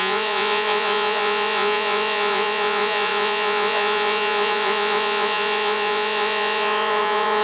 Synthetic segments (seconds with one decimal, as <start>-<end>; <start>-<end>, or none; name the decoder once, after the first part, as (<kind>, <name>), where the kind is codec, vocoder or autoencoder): 0.0-7.4 (vocoder, Vocos)